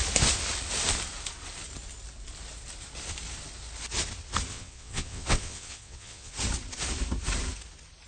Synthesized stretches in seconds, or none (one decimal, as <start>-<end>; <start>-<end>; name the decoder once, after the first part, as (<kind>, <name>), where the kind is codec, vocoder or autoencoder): 4.5-6.3 (vocoder, WaveNeXt)